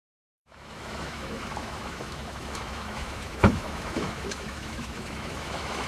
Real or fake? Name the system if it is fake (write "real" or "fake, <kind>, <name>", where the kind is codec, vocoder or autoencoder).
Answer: fake, autoencoder, DAC-VAE